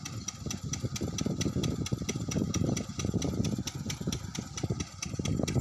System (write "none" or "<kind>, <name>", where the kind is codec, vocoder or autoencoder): none